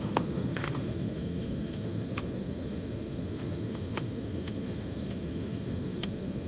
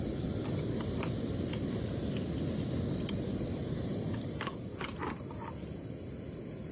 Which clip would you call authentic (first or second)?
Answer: second